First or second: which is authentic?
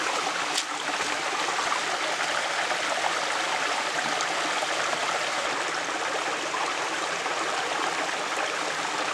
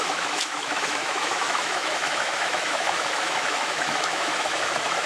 first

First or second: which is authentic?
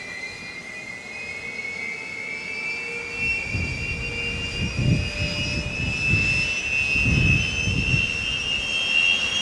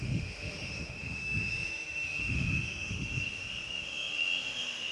first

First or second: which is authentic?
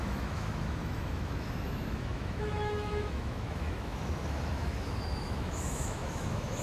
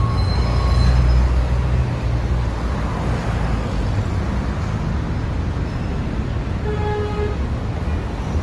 second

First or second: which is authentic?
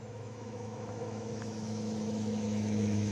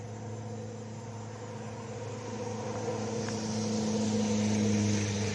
second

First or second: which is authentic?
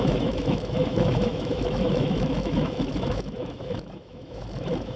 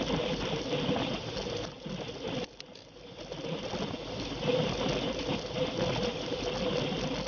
second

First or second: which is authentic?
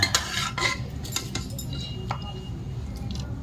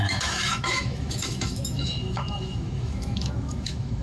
first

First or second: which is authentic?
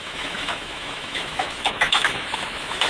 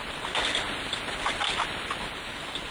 second